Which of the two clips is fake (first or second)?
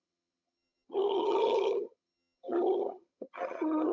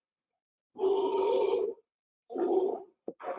first